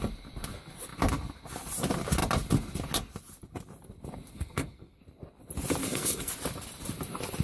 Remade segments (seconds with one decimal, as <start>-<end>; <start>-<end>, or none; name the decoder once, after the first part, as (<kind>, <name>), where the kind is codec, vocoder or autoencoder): 4.3-5.0 (codec, SNAC); 5.8-6.3